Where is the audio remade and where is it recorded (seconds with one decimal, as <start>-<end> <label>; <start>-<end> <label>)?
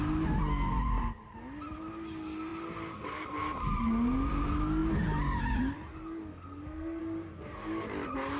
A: 0.0-6.3 recorded; 6.3-7.0 remade; 7.0-8.4 recorded